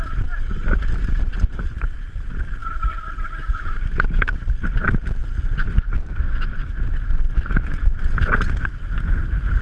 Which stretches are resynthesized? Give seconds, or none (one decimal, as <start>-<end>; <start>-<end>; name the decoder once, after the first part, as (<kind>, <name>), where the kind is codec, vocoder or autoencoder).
none